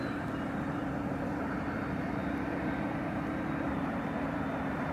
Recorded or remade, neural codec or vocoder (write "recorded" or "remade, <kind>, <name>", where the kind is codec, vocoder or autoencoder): remade, vocoder, BigVGAN v2